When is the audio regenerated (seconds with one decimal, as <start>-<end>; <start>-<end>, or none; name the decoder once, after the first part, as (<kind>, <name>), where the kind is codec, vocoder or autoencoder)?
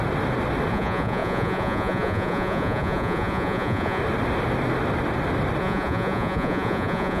0.7-4.0 (vocoder, Vocos); 5.6-7.2